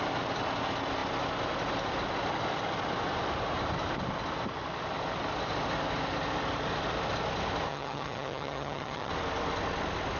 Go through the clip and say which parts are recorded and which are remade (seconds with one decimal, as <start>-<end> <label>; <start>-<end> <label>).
0.0-7.7 recorded; 7.7-9.1 remade; 9.1-10.2 recorded